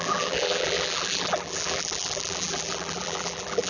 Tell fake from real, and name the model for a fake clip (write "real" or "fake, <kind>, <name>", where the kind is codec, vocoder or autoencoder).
fake, vocoder, BigVGAN v2